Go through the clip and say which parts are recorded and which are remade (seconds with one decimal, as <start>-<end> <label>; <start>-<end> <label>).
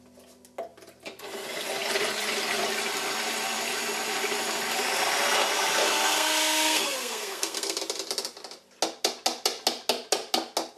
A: 0.0-5.8 recorded; 5.8-7.8 remade; 7.8-10.8 recorded